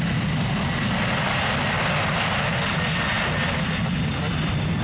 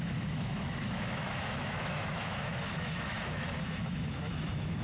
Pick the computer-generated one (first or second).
second